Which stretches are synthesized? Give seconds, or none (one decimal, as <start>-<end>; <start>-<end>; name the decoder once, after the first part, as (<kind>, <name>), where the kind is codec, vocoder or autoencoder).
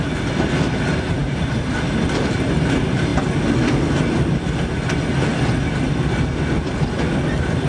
none